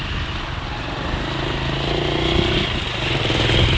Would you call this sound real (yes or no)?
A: yes